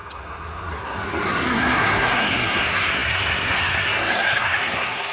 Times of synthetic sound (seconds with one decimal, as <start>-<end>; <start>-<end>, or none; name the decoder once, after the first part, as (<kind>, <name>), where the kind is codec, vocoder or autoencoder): 0.0-5.1 (codec, SNAC)